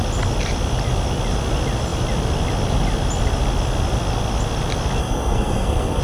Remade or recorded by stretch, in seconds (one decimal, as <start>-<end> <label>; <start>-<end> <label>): 0.0-5.0 recorded; 5.0-6.0 remade